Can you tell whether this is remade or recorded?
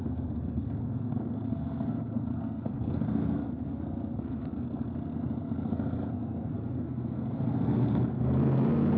remade